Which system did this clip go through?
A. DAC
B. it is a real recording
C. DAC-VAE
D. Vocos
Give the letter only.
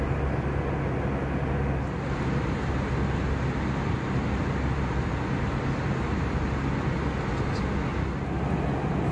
B